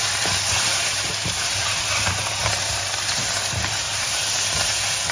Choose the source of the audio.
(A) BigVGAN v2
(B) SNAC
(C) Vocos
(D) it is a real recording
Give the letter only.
A